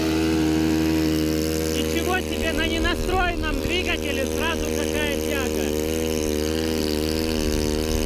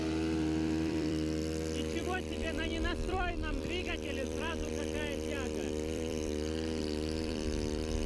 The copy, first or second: second